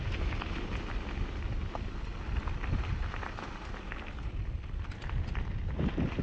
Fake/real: real